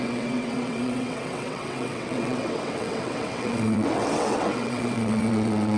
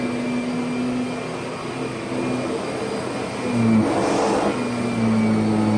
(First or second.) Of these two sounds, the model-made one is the first